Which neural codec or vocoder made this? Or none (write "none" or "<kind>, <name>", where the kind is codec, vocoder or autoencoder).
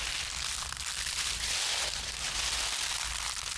none